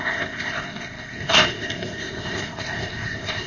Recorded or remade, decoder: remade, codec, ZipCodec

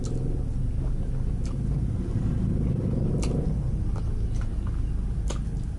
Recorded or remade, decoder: recorded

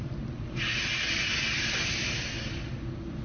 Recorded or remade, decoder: recorded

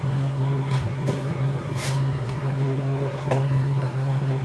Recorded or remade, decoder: remade, codec, SNAC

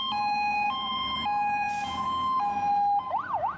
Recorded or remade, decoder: recorded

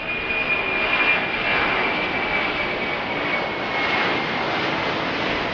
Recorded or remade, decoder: recorded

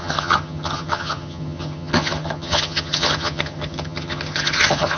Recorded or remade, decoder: remade, vocoder, HiFi-GAN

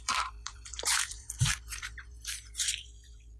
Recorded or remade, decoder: remade, vocoder, BigVGAN v2